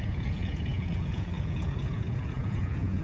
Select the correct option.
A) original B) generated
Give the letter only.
B